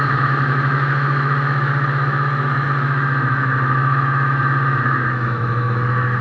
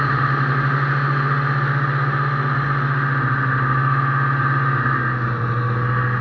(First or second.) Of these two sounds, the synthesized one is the first